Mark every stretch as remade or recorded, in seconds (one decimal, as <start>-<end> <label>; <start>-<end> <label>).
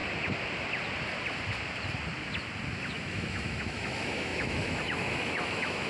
0.0-2.9 recorded; 2.9-5.9 remade